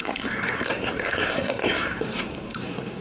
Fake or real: fake